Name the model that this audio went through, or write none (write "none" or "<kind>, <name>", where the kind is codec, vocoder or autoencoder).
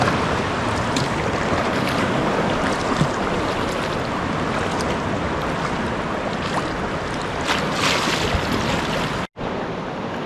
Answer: none